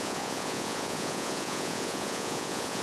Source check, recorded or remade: remade